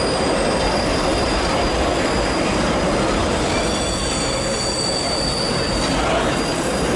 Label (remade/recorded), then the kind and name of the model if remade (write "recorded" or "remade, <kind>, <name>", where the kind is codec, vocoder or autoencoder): recorded